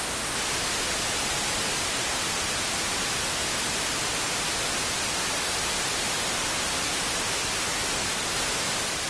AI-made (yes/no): no